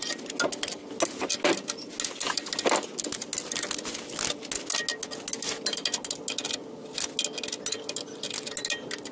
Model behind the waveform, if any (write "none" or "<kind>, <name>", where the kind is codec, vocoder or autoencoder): none